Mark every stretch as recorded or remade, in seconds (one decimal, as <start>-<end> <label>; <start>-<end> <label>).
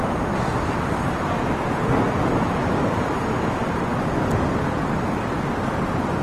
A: 0.0-6.2 recorded